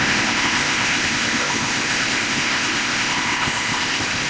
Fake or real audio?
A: fake